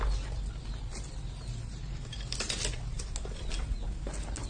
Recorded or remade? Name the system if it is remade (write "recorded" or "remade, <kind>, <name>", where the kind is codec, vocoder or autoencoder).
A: recorded